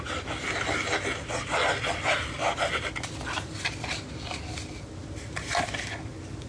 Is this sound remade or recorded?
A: recorded